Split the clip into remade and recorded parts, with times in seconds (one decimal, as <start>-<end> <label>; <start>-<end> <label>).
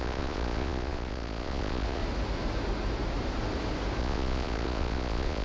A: 0.0-2.0 remade; 2.0-4.0 recorded; 4.0-5.4 remade